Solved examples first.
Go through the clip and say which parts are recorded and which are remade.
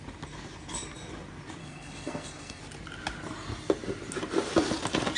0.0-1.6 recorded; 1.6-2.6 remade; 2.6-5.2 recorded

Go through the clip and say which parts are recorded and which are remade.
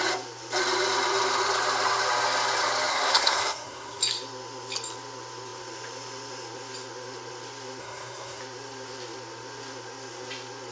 0.0-2.9 recorded; 2.9-4.0 remade; 4.0-7.8 recorded; 7.8-8.4 remade; 8.4-10.7 recorded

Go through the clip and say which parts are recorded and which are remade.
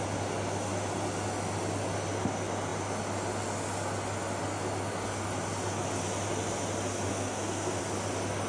0.0-7.1 recorded; 7.1-7.8 remade; 7.8-8.5 recorded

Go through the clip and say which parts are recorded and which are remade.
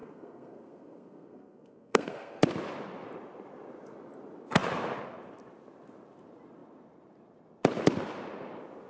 0.0-2.4 remade; 2.4-8.9 recorded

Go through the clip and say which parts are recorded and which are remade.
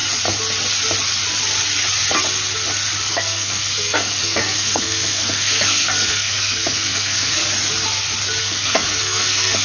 0.0-3.1 recorded; 3.1-7.4 remade; 7.4-8.4 recorded; 8.4-9.6 remade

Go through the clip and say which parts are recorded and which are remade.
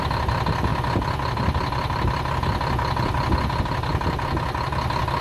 0.0-5.2 recorded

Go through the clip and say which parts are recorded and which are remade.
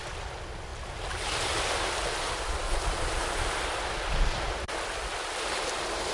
0.0-6.1 recorded